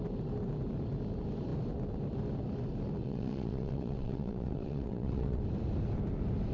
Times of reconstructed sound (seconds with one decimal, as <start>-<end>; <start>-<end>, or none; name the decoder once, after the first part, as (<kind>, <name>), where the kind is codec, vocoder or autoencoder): 3.0-5.4 (vocoder, WaveNeXt)